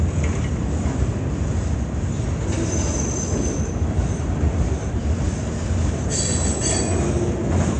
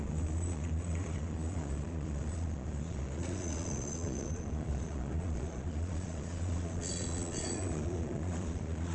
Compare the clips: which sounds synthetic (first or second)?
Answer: second